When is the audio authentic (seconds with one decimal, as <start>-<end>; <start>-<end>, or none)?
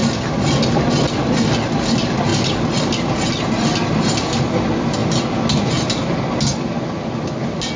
0.0-7.8